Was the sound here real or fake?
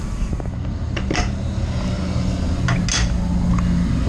real